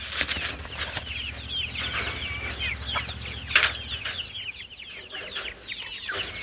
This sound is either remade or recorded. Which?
recorded